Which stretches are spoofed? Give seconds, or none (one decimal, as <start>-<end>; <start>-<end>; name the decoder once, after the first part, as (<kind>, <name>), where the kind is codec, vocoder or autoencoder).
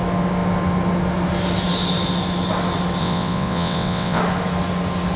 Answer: 3.0-4.2 (vocoder, WaveNeXt)